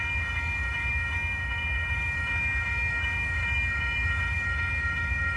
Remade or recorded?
remade